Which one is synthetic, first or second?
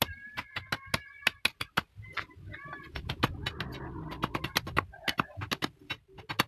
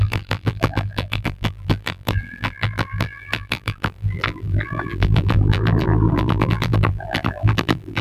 second